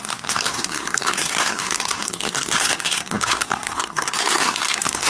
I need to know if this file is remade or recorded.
remade